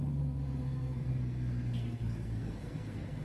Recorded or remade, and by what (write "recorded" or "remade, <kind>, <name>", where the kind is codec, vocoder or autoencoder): remade, codec, SNAC